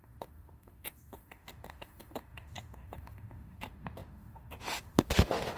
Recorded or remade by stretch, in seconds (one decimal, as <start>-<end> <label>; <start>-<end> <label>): 0.0-5.6 remade